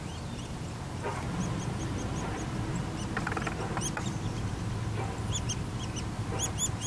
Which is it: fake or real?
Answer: real